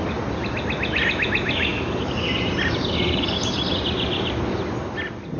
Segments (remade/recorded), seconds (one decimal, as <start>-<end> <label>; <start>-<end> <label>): 0.0-5.4 recorded